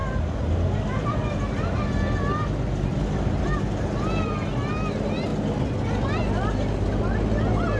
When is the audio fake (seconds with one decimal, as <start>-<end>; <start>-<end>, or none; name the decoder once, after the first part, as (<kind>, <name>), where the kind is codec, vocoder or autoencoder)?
none